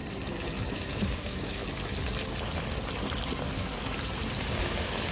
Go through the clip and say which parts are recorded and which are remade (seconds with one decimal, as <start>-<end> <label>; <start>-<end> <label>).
0.0-0.7 recorded; 0.7-1.6 remade; 1.6-4.6 recorded; 4.6-5.1 remade